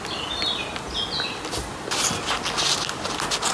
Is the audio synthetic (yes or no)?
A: no